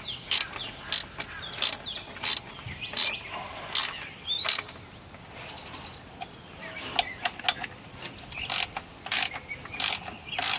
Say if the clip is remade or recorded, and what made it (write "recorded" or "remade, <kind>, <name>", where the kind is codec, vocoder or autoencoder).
recorded